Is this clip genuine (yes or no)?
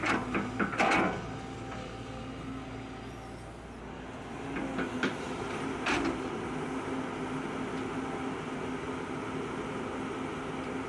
yes